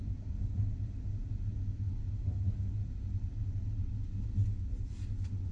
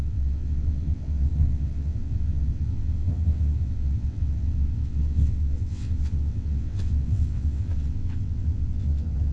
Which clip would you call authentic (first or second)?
first